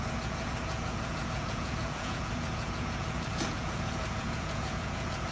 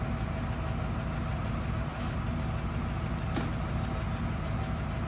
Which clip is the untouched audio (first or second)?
second